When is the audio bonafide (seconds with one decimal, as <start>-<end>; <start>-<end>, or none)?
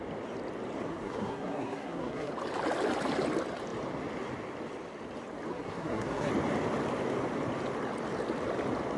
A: 0.0-0.9; 2.3-5.5; 6.3-9.0